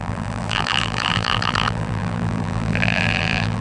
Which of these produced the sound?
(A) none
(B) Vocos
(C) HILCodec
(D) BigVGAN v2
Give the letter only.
D